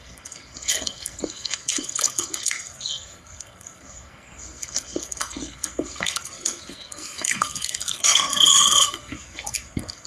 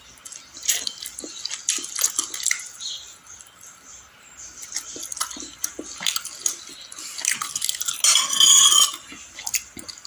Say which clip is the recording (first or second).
second